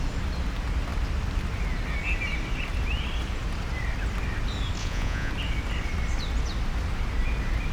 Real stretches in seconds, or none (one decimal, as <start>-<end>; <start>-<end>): 0.0-4.8; 5.3-7.7